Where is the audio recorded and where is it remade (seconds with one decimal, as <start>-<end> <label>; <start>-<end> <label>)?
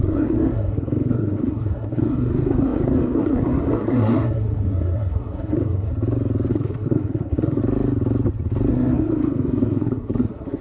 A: 0.0-5.9 remade; 5.9-6.5 recorded; 6.5-7.6 remade; 7.6-8.7 recorded; 8.7-10.6 remade